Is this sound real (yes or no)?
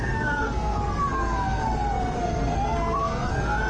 no